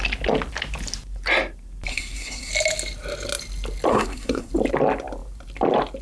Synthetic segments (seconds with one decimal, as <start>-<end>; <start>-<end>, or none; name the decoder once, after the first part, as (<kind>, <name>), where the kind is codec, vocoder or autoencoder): 1.9-2.5 (codec, SNAC); 3.9-4.5